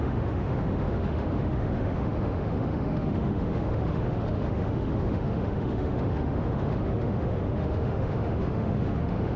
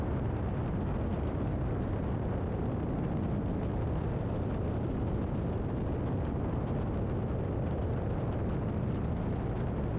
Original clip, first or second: second